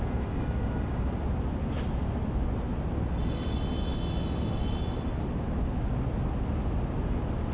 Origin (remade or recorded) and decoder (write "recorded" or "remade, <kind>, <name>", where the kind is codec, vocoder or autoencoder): recorded